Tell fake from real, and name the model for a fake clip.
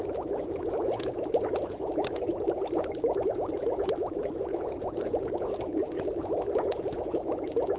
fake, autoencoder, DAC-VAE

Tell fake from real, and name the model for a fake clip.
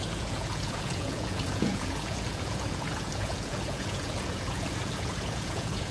fake, vocoder, Vocos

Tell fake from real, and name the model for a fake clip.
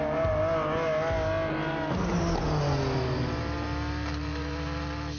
real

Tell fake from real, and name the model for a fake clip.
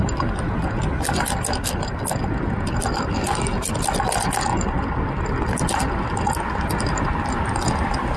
real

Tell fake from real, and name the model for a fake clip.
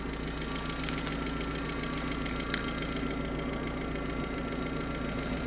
real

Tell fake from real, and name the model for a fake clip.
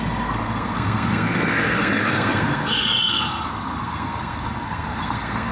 fake, codec, SNAC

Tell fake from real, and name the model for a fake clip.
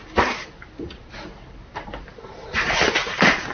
real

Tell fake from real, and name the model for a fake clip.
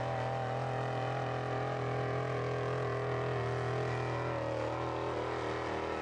real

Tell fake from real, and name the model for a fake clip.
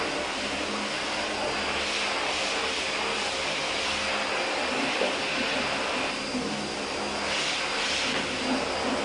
real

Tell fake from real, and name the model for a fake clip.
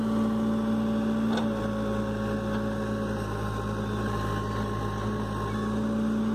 real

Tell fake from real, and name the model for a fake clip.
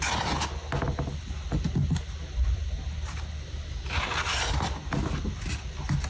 real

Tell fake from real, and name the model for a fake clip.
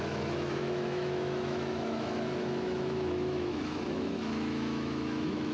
fake, autoencoder, DAC-VAE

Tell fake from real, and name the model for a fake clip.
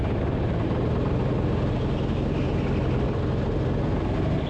real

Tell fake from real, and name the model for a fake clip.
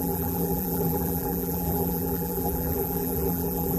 fake, vocoder, BigVGAN v2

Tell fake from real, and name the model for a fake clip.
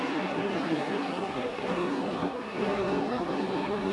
fake, codec, SNAC